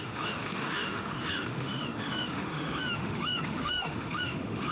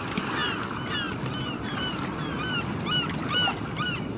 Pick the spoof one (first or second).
first